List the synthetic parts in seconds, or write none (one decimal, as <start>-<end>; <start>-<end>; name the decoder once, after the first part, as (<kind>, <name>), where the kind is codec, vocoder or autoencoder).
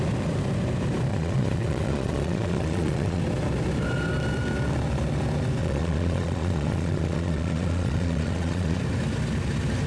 1.1-3.2 (vocoder, Vocos); 5.6-8.8